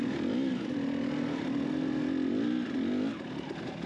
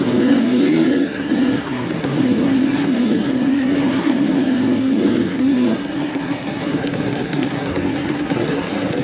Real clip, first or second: first